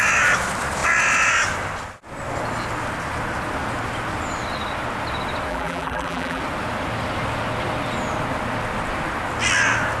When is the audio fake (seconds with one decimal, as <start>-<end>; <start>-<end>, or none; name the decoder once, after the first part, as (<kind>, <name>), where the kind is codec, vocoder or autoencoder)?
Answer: 5.5-6.4 (vocoder, BigVGAN v2)